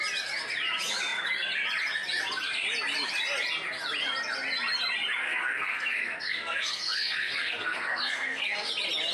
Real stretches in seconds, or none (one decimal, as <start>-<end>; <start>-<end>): 0.0-5.2; 8.7-9.1